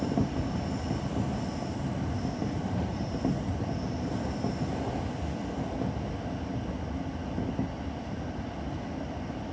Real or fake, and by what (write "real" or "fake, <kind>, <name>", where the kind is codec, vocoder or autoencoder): real